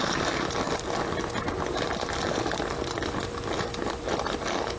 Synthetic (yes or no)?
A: no